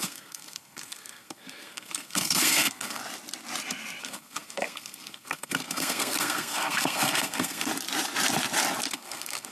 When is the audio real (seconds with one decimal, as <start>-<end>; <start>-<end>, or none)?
3.0-4.0; 7.7-8.9

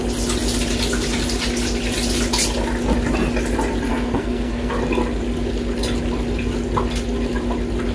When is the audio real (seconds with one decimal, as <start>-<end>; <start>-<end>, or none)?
0.0-3.9; 4.7-7.9

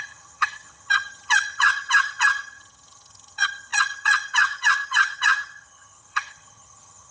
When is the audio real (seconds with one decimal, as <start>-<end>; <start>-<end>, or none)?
none

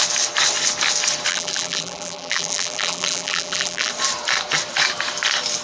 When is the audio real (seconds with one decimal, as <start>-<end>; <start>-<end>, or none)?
0.0-1.3; 3.9-5.6

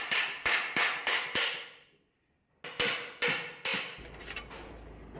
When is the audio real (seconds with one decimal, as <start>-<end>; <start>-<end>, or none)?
0.0-5.2

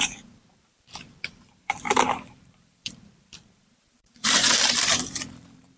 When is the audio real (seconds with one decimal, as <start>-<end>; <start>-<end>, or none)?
none

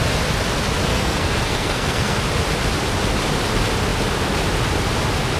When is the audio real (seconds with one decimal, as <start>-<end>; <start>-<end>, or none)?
0.0-0.9; 2.2-5.4